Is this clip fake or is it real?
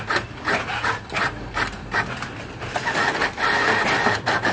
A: real